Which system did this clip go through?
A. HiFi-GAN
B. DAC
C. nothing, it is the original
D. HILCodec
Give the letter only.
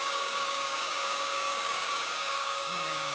B